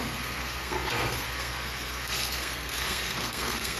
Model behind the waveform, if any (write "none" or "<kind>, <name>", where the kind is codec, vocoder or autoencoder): codec, SNAC